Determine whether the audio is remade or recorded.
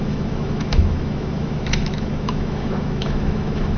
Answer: remade